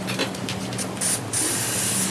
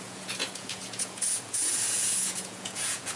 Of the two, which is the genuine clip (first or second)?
first